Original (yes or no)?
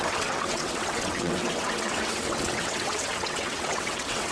no